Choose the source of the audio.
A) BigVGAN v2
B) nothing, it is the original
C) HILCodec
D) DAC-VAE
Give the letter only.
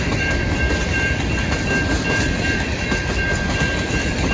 A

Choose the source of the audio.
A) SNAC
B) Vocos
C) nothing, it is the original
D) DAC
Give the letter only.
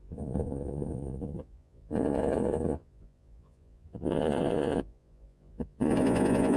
B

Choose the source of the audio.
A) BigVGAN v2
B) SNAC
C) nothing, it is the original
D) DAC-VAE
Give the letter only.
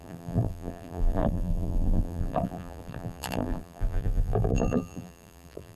A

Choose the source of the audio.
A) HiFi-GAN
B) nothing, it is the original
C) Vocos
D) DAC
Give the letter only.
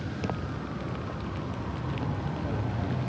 B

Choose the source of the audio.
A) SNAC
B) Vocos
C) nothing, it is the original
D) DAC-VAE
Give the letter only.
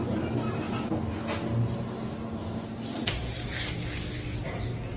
C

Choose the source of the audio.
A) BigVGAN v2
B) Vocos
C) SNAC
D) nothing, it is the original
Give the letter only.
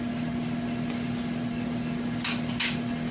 D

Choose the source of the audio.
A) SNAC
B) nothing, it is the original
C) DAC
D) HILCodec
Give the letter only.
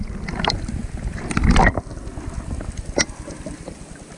B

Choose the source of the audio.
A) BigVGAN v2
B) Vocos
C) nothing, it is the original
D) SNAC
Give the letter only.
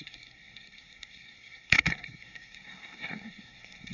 D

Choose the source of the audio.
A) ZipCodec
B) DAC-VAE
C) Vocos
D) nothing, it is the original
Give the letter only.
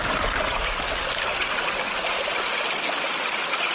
D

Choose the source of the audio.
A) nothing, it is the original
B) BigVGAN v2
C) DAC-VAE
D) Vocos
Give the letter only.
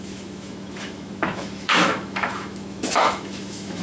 C